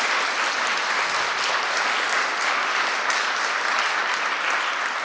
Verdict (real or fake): real